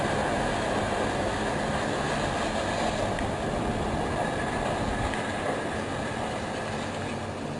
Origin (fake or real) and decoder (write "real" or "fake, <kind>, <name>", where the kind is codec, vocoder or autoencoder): real